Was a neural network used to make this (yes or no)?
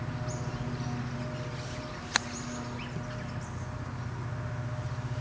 no